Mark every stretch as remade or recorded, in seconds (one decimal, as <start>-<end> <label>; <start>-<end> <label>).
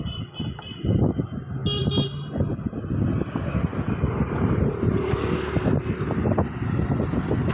0.0-7.5 recorded